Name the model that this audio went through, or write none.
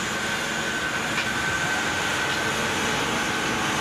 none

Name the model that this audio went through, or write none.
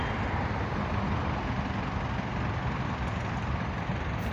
none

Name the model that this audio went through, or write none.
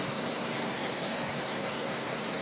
codec, SNAC